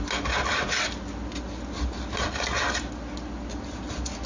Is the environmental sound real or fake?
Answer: real